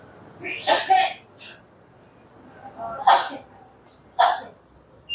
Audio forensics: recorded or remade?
recorded